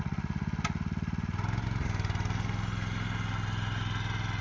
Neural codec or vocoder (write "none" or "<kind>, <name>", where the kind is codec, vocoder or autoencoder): none